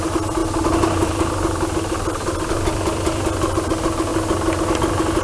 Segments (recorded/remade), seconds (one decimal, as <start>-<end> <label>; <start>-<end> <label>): 0.0-5.2 recorded